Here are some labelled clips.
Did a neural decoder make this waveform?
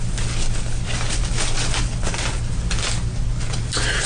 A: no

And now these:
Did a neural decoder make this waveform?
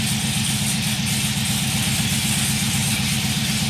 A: no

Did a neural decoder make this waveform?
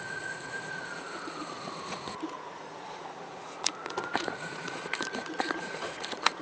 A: yes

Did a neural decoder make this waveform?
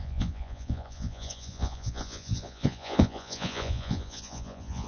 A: yes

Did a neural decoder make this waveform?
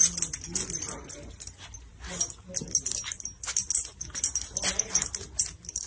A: no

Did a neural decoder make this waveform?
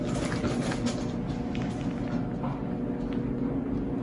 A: no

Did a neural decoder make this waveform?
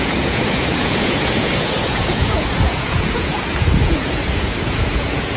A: yes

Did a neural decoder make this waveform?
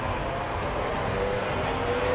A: no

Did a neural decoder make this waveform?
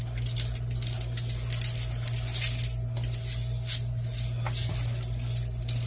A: no